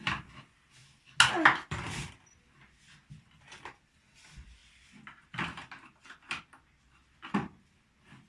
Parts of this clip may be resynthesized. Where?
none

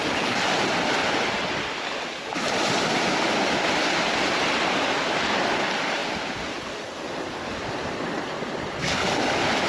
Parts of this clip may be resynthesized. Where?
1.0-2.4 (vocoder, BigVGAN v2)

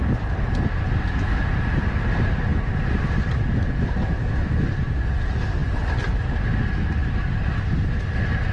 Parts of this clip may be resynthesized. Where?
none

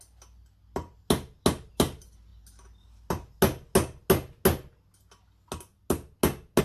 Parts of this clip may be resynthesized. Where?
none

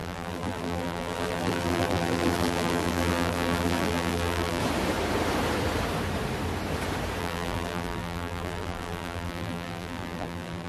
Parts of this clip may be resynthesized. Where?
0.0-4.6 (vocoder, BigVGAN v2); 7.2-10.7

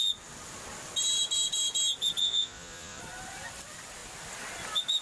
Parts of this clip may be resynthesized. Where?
2.2-3.0 (vocoder, Vocos)

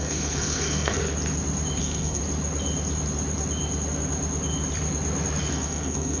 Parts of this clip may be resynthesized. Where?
0.0-1.0 (codec, SNAC); 1.8-2.2; 5.5-6.2